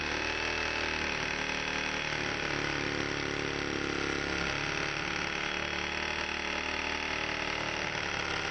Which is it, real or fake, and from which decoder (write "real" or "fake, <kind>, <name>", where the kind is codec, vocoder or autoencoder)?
real